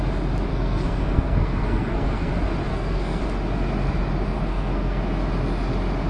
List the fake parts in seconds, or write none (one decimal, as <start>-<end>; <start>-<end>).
0.5-2.3; 2.7-3.2; 4.5-5.0